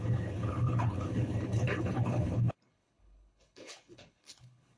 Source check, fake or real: fake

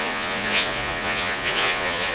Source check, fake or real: fake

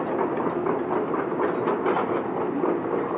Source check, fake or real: real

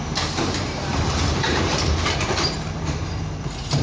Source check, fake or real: fake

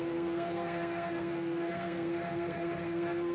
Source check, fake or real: fake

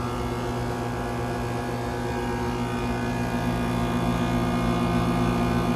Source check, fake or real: real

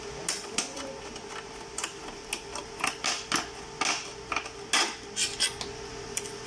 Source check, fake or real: real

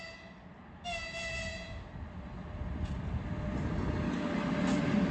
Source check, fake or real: real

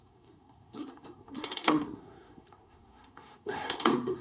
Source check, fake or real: fake